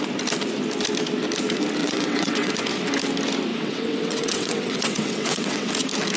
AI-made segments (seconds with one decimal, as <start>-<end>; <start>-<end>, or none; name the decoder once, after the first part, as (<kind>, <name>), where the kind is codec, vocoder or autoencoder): 1.8-2.5 (vocoder, WaveNeXt); 3.5-5.7